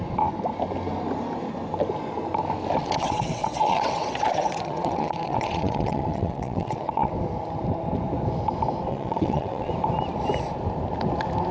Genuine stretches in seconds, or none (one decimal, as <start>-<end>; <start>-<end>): 0.0-2.8; 7.1-8.9; 9.7-11.5